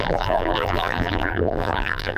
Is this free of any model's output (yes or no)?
no